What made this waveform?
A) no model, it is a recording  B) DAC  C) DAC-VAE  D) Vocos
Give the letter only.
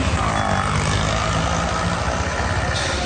A